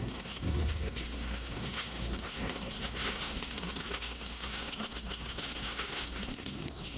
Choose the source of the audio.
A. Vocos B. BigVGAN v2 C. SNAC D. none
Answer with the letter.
C